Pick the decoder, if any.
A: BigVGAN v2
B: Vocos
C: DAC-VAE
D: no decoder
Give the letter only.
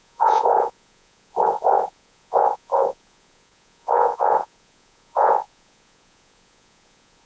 B